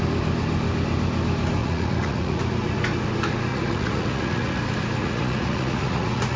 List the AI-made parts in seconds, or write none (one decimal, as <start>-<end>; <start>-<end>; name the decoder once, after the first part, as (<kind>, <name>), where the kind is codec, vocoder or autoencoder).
1.6-2.4 (vocoder, Vocos); 3.5-4.6; 5.0-6.4